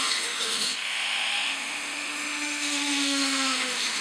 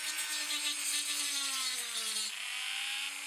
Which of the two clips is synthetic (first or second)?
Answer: first